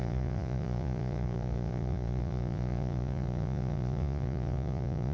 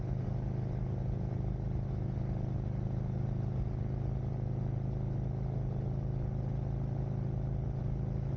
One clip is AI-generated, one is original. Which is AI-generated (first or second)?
first